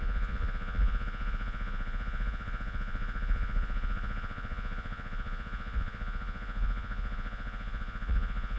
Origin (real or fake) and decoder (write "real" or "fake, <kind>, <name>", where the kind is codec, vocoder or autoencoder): fake, vocoder, Vocos